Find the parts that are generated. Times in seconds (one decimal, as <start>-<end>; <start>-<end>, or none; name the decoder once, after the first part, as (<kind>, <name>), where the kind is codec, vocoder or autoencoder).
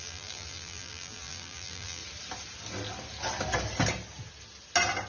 0.0-2.0 (vocoder, BigVGAN v2)